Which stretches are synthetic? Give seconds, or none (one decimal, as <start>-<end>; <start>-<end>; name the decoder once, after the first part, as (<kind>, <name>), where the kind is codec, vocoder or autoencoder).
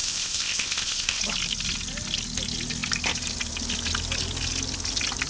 0.0-1.2 (codec, ZipCodec)